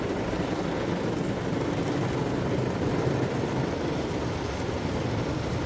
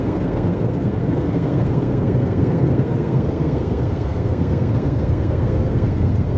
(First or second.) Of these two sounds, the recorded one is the first